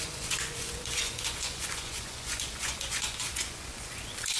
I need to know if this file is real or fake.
fake